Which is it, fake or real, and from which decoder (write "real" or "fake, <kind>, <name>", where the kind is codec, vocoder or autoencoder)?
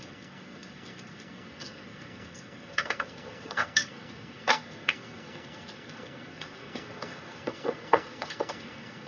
fake, codec, SNAC